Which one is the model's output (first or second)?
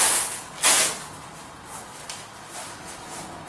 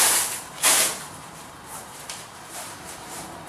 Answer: second